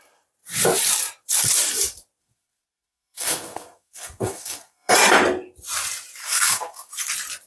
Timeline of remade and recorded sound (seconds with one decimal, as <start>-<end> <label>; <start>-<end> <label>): 0.0-2.2 recorded; 2.2-4.9 remade; 4.9-6.2 recorded; 6.2-7.1 remade; 7.1-7.5 recorded